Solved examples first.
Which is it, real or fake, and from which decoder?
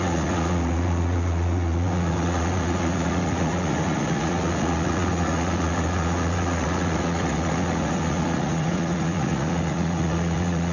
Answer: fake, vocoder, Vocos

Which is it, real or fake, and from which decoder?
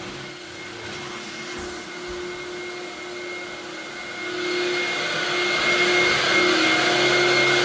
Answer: real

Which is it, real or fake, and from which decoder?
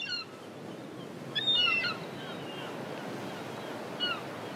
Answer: real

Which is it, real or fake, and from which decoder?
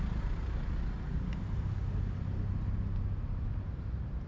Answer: real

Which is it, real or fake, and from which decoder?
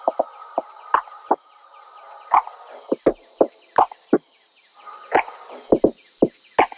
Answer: real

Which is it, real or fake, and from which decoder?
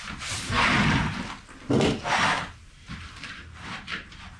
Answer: real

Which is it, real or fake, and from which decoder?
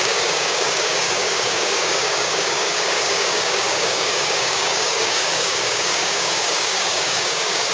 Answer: fake, codec, DAC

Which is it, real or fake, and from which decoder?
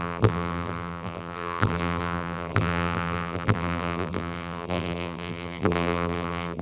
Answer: fake, vocoder, BigVGAN v2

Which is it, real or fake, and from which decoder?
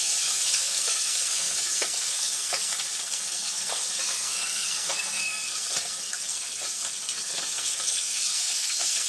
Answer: fake, codec, SNAC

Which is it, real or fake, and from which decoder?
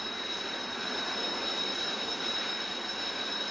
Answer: fake, vocoder, BigVGAN v2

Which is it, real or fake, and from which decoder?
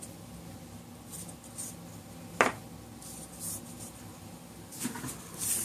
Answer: real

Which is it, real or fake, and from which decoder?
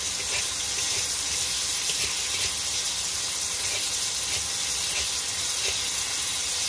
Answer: real